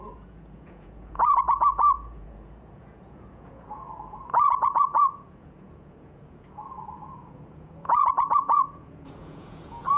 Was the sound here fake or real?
fake